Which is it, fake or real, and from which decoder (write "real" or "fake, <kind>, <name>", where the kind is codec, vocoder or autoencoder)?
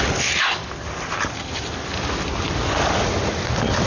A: real